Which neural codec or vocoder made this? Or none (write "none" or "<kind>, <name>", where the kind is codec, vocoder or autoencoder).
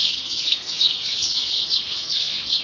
codec, SNAC